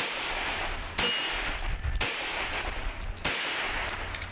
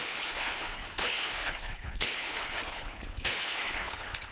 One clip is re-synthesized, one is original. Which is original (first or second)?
first